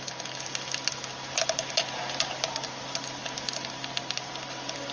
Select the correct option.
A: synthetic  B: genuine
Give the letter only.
B